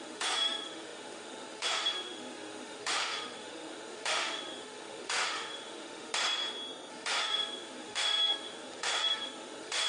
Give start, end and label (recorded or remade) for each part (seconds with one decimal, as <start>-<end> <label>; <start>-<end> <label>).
0.0-6.1 remade; 6.1-6.9 recorded; 6.9-9.9 remade